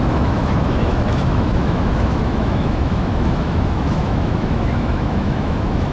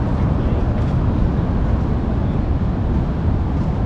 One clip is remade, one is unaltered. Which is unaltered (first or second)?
second